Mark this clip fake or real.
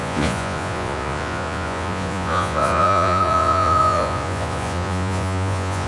fake